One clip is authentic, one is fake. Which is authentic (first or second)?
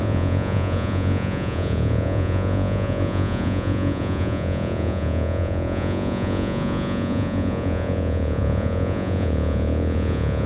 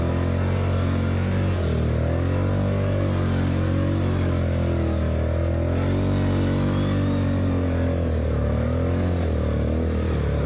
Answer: second